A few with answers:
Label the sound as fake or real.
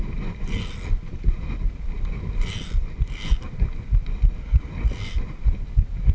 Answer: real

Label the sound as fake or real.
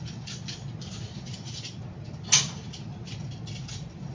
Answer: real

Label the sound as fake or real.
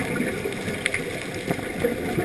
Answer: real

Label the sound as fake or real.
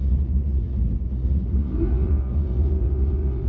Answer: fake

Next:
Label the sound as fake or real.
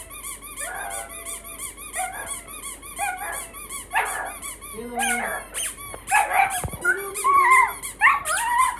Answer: real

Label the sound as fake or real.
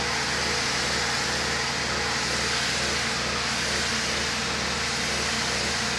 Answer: real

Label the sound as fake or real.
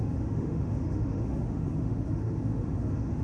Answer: fake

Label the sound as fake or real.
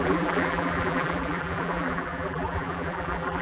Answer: fake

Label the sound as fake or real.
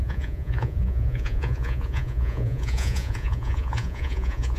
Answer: fake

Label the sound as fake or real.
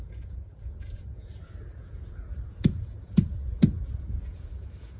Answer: fake